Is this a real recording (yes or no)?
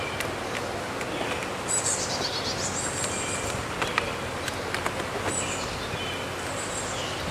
no